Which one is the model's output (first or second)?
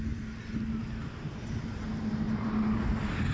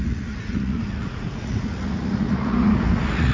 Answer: second